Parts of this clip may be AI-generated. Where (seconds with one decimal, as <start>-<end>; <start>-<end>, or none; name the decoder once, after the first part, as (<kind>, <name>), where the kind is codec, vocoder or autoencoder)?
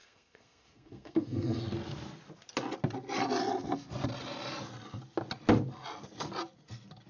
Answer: 0.0-1.6 (codec, SNAC)